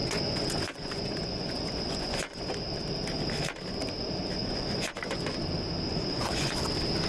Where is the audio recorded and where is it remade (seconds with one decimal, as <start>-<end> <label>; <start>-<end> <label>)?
0.0-2.4 remade; 2.4-4.4 recorded; 4.4-5.4 remade; 5.4-5.9 recorded; 5.9-6.5 remade; 6.5-7.1 recorded